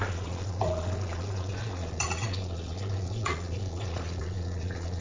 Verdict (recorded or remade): remade